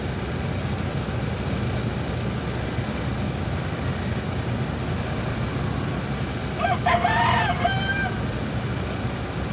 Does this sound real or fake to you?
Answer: real